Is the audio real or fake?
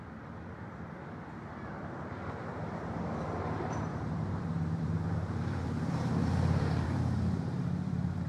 fake